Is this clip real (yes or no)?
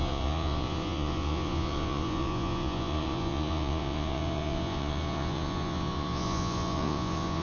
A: no